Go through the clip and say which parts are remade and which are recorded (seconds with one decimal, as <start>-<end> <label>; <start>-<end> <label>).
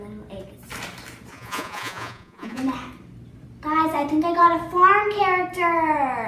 0.0-1.3 recorded; 1.3-2.6 remade; 2.6-6.3 recorded